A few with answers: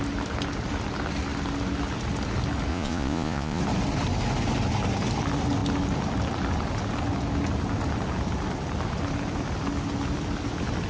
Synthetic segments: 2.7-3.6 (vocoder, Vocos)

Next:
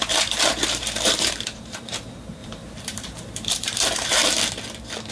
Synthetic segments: 0.0-4.2 (vocoder, BigVGAN v2)

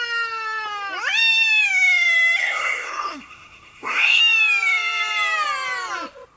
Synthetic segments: 2.4-4.2 (codec, SNAC)

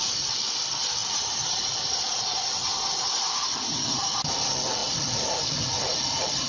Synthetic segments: none

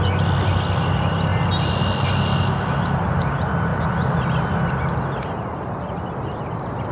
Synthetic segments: none

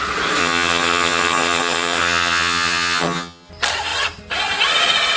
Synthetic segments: 0.4-3.5 (vocoder, HiFi-GAN)

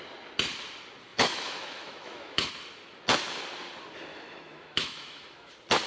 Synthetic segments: 1.1-2.5 (autoencoder, DAC-VAE); 4.1-5.5

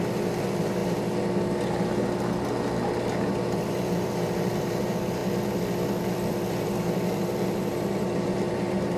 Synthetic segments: 0.0-0.8 (vocoder, BigVGAN v2); 3.5-5.2; 6.1-9.0